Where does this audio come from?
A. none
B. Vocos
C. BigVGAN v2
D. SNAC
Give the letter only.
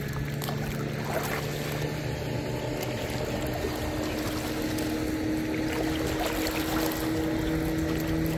A